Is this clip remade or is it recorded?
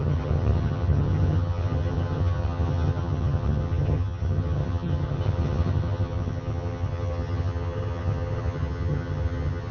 remade